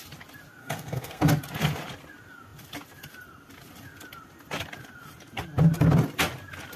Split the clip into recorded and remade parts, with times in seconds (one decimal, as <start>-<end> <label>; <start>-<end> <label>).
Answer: 0.0-0.6 recorded; 0.6-1.3 remade; 1.3-6.8 recorded